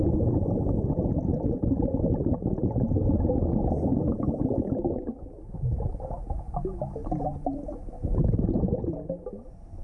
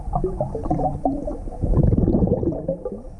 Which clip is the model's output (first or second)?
second